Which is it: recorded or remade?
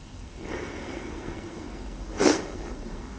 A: remade